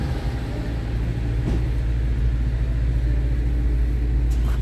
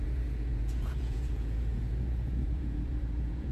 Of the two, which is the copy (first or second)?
second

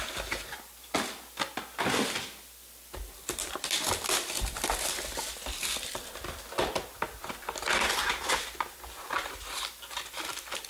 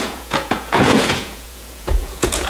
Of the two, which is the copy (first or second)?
second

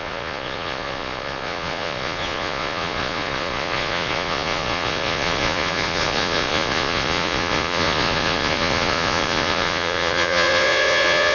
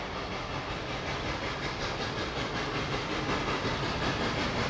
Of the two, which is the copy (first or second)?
first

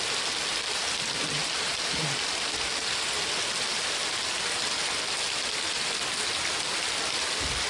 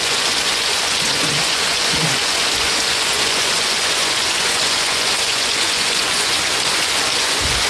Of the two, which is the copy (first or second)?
second